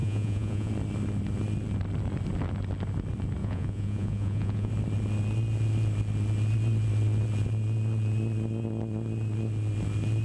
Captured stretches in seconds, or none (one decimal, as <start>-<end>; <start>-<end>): 0.7-3.4; 4.7-10.2